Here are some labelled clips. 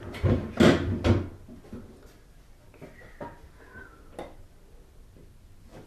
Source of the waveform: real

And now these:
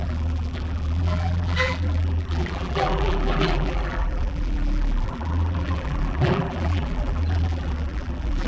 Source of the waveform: fake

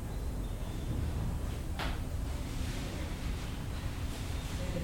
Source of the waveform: fake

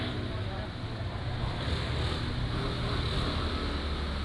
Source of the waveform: real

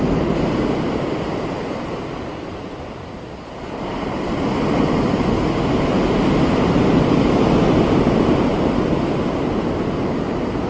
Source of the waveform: fake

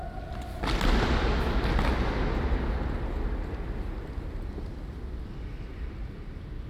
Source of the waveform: real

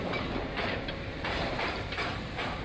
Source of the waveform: fake